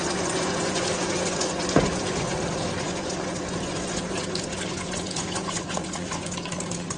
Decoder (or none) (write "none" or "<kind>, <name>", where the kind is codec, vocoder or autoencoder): vocoder, Vocos